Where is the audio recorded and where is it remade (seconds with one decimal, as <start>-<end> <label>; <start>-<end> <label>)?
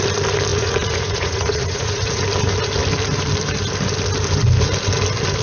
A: 0.0-0.5 recorded; 0.5-2.2 remade; 2.2-5.4 recorded